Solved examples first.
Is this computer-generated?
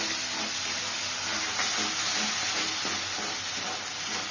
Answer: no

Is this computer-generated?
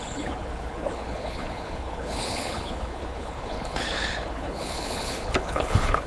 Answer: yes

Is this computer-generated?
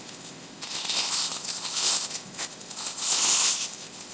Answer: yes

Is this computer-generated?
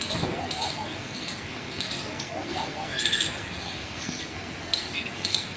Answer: yes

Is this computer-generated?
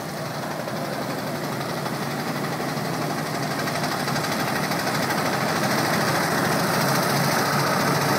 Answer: no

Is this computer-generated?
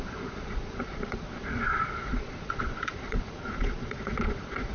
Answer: yes